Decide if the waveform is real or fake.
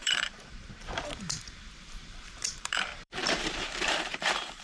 fake